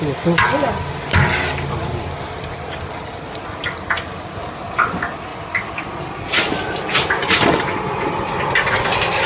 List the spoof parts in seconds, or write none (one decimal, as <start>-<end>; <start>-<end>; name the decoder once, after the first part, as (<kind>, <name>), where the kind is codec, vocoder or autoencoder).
none